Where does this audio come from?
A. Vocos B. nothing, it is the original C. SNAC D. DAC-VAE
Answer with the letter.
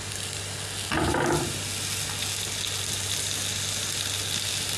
B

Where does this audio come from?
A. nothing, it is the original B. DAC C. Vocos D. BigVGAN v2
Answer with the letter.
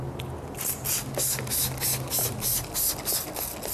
A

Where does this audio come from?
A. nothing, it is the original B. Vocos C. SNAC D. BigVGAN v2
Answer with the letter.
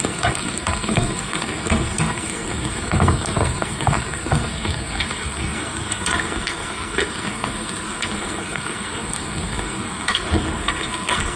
C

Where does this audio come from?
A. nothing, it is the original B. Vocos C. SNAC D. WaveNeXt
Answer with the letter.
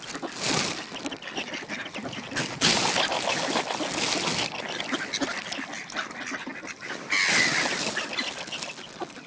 A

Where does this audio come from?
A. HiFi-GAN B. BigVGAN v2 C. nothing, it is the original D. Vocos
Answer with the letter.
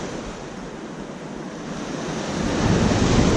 C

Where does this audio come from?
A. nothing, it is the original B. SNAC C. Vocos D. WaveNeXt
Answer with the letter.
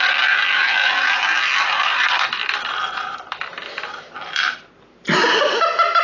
A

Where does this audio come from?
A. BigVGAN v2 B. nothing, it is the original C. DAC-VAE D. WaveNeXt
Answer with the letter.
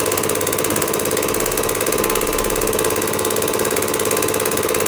B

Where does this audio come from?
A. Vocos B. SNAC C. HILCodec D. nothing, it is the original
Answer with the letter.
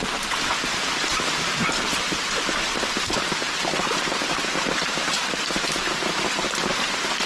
D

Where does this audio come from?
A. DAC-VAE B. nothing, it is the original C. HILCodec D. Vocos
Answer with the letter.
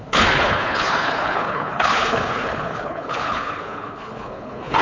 C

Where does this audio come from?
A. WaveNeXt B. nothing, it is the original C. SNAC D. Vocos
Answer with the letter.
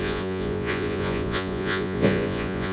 D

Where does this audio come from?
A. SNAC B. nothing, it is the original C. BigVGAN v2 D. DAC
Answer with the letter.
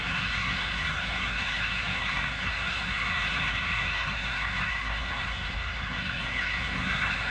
A